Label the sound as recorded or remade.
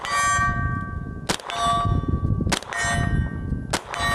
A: recorded